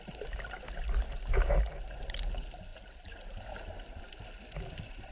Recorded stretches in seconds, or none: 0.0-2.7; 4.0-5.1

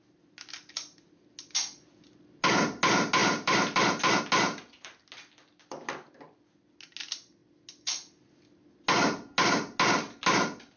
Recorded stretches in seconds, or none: 0.0-3.2; 4.2-10.8

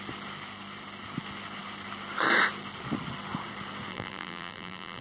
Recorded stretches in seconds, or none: 0.0-3.9

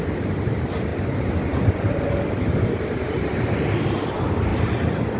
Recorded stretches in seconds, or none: 0.0-5.2